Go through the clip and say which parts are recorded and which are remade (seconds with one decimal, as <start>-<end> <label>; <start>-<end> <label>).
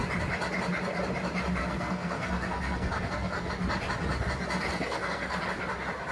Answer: 0.0-1.6 recorded; 1.6-3.5 remade; 3.5-4.7 recorded; 4.7-5.4 remade; 5.4-6.1 recorded